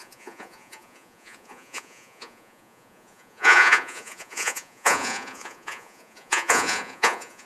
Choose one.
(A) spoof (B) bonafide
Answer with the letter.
A